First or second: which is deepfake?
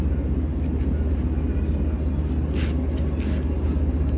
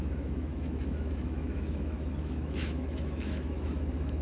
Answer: second